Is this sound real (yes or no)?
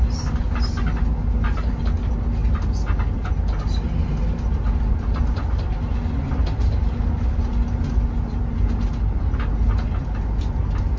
yes